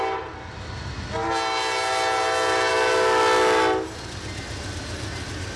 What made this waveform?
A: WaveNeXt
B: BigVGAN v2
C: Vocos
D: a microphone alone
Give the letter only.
D